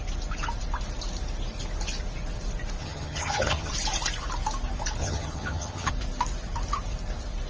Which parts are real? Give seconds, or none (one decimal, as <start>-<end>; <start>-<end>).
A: 0.0-2.8; 3.7-5.0; 5.9-7.5